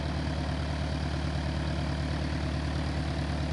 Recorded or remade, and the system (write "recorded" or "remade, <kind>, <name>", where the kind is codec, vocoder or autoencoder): recorded